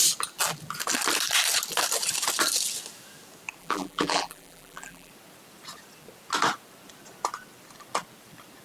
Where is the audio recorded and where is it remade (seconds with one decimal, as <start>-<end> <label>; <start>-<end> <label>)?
0.0-3.6 recorded; 3.6-5.1 remade; 5.1-8.6 recorded